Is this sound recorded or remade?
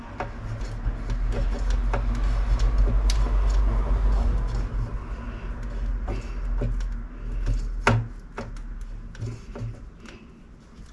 recorded